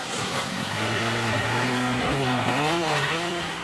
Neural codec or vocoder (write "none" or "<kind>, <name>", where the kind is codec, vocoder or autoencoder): codec, SNAC